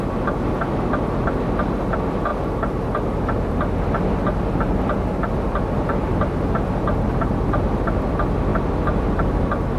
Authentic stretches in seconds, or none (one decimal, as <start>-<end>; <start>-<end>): 0.0-9.8